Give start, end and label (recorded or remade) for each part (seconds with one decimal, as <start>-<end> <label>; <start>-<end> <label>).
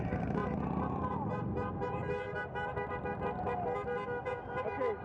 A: 0.0-2.0 remade; 2.0-5.0 recorded